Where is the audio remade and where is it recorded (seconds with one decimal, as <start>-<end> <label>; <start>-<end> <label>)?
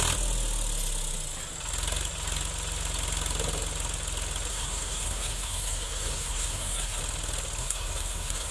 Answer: 0.0-4.5 recorded; 4.5-7.0 remade; 7.0-7.6 recorded; 7.6-8.5 remade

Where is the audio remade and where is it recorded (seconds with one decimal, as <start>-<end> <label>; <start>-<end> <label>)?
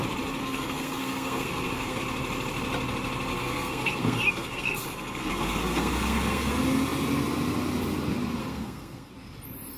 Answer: 0.0-0.4 recorded; 0.4-2.0 remade; 2.0-3.3 recorded; 3.3-6.5 remade; 6.5-8.4 recorded; 8.4-9.1 remade; 9.1-9.8 recorded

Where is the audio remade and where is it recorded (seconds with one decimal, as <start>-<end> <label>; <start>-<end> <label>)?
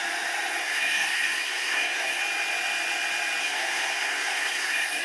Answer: 0.0-0.6 recorded; 0.6-2.2 remade; 2.2-3.4 recorded; 3.4-5.0 remade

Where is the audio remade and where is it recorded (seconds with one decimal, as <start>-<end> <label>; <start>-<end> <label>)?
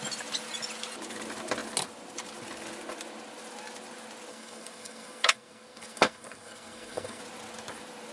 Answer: 0.0-4.3 recorded; 4.3-7.2 remade; 7.2-8.1 recorded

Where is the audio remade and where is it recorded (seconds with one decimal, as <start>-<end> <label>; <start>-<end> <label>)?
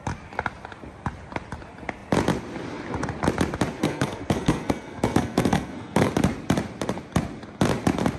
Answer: 0.0-3.8 recorded; 3.8-6.1 remade; 6.1-8.2 recorded